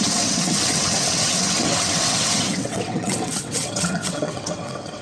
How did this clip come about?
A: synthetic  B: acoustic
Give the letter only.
A